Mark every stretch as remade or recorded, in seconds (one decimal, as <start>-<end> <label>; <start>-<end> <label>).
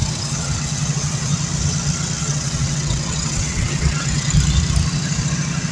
0.0-1.3 remade; 1.3-2.2 recorded; 2.2-4.3 remade; 4.3-5.7 recorded